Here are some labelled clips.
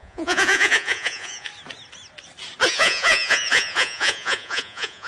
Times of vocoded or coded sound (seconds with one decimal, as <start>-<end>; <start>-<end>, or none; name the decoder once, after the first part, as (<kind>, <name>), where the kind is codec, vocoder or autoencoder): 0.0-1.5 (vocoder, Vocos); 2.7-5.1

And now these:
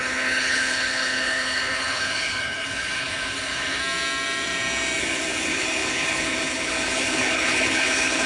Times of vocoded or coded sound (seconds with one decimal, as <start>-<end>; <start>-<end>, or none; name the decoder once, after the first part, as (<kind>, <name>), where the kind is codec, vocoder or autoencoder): 0.0-3.8 (codec, HILCodec); 5.0-8.3

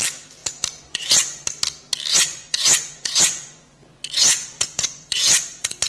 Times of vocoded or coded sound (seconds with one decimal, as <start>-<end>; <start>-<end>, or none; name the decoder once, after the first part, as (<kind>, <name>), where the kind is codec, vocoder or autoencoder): 0.4-1.4 (vocoder, Vocos); 2.1-5.9